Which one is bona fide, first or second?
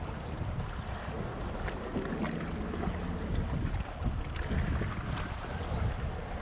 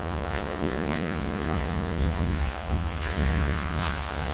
first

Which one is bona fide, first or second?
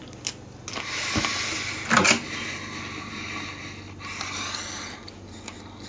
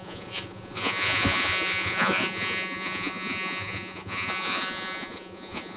first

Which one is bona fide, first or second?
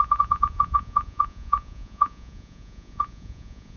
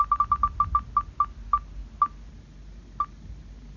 second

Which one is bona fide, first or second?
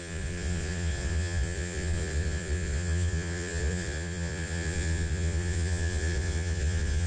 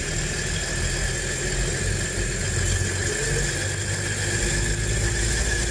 second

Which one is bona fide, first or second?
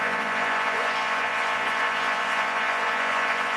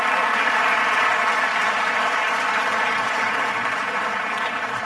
second